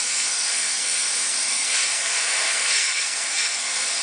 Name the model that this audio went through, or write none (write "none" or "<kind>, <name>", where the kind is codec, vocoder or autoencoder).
codec, SNAC